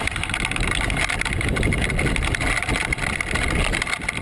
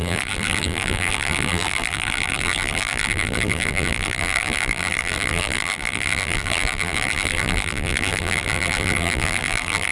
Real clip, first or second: first